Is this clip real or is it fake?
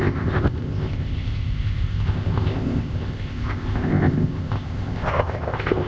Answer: fake